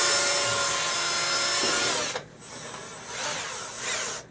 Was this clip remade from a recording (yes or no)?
no